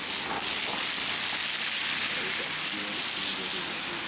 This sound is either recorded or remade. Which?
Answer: recorded